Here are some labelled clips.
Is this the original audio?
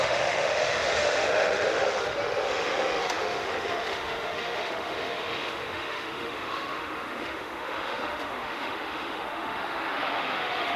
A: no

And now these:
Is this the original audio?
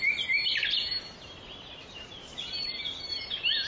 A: yes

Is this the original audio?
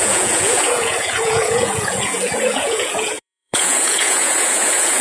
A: no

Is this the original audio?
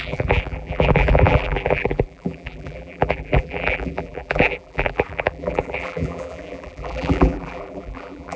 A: no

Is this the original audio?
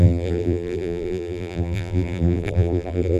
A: no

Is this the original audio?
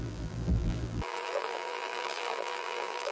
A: no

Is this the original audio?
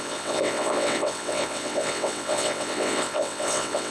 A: no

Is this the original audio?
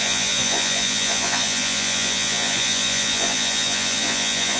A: no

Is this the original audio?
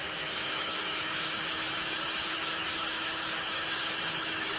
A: no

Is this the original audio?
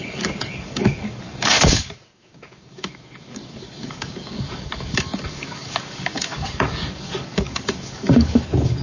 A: no